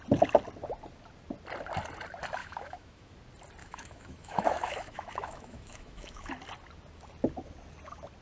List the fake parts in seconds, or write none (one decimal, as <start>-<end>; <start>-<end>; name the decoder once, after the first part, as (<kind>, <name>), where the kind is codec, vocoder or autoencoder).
2.4-3.1 (autoencoder, DAC-VAE); 3.6-6.3